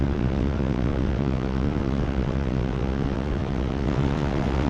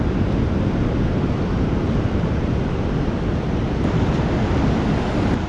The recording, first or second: second